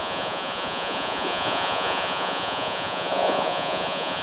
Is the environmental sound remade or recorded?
remade